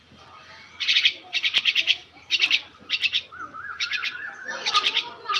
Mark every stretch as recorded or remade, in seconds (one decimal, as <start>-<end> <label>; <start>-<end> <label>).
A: 0.0-2.0 recorded; 2.0-2.9 remade; 2.9-5.4 recorded